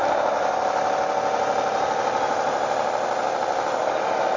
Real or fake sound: real